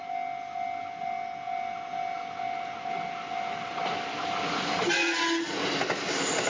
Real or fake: real